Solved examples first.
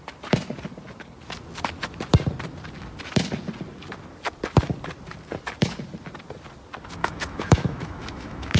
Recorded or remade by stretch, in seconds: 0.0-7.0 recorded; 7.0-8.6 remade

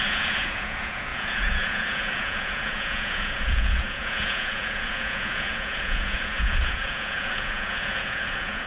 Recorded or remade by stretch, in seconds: 0.0-8.7 remade

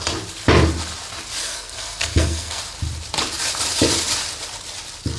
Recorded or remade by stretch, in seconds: 0.0-1.4 recorded; 1.4-2.6 remade; 2.6-5.2 recorded

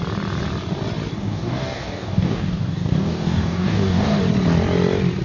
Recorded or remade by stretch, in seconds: 0.0-1.1 recorded; 1.1-4.2 remade; 4.2-5.2 recorded